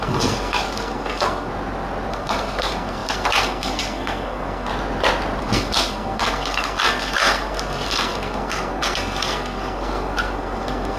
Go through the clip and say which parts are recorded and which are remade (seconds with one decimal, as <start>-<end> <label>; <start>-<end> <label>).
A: 0.0-1.5 remade; 1.5-2.1 recorded; 2.1-4.7 remade; 4.7-5.4 recorded; 5.4-11.0 remade

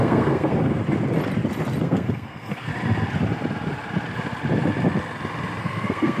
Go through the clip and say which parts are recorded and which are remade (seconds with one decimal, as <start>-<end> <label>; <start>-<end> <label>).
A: 0.0-0.8 remade; 0.8-1.8 recorded; 1.8-2.7 remade; 2.7-5.6 recorded; 5.6-6.2 remade

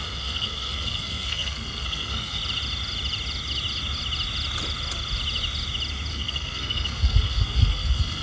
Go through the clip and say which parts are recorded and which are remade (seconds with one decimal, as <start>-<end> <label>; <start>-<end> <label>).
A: 0.0-2.4 remade; 2.4-6.1 recorded; 6.1-8.2 remade

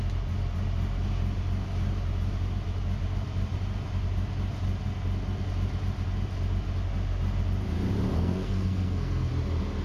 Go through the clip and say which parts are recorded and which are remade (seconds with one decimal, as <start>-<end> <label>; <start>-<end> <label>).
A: 0.0-8.1 recorded; 8.1-9.3 remade; 9.3-9.8 recorded